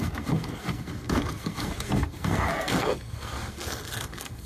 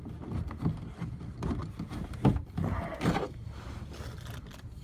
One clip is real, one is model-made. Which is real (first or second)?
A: second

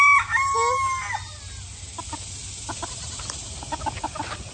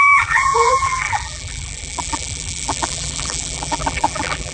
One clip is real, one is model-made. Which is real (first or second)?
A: first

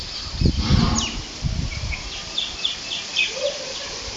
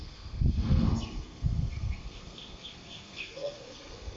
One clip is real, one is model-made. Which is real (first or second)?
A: first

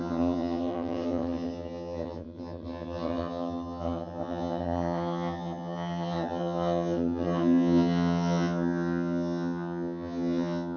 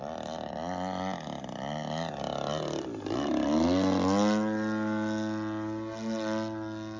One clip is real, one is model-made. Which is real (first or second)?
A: second